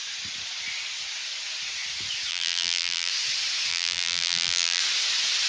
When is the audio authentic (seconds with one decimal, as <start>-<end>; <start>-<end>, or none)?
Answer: 0.0-2.3; 3.1-3.7; 4.8-5.5